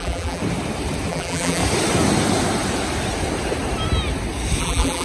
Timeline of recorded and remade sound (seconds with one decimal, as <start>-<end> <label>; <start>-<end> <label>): 0.0-0.4 remade; 0.4-1.1 recorded; 1.1-1.6 remade; 1.6-4.6 recorded; 4.6-5.0 remade